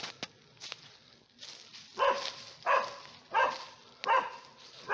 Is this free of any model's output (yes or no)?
yes